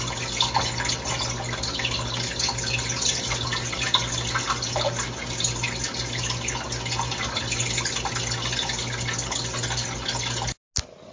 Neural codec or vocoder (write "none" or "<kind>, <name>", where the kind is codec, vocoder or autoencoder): none